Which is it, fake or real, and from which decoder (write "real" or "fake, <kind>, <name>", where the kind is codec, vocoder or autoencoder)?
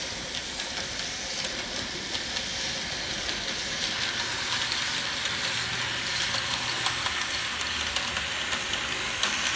real